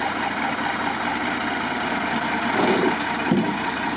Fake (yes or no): no